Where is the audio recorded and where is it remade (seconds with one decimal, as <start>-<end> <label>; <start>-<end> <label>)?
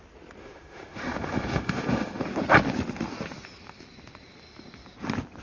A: 0.0-0.4 recorded; 0.4-2.2 remade; 2.2-5.4 recorded